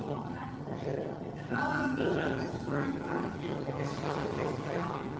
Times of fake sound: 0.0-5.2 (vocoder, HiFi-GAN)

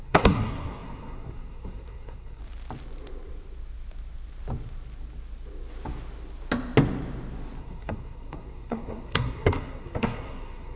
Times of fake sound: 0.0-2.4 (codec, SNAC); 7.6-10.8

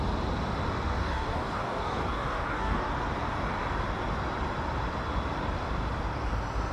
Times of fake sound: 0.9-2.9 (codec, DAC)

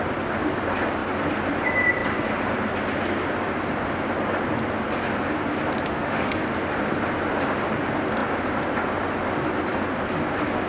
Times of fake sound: 5.9-6.4 (autoencoder, DAC-VAE)

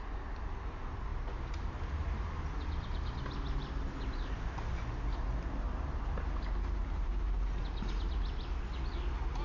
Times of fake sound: none